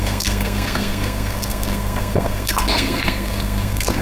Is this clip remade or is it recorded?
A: remade